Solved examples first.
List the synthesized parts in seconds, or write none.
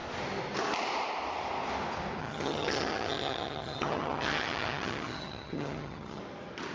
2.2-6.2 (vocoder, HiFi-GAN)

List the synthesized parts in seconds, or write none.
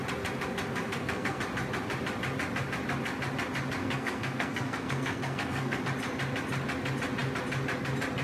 0.7-1.4 (codec, SNAC); 3.8-5.8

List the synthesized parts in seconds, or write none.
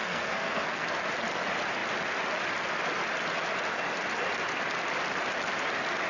0.0-1.0 (codec, SNAC)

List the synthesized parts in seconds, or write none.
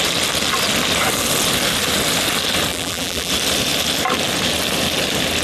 2.7-3.3 (vocoder, BigVGAN v2)